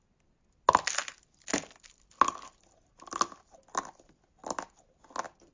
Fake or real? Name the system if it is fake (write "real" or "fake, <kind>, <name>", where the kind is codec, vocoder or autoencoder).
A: real